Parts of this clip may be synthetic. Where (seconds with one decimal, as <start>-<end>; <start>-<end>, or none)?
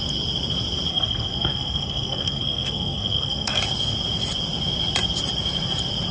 0.9-3.6